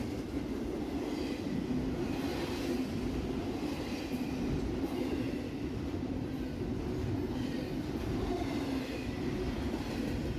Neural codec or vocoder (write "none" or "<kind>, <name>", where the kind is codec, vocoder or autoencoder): none